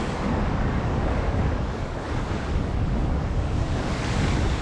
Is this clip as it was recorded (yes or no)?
no